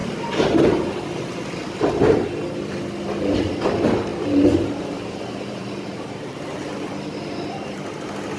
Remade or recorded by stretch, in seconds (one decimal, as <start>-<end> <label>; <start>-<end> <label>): 0.0-0.7 remade; 0.7-4.1 recorded; 4.1-7.8 remade; 7.8-8.4 recorded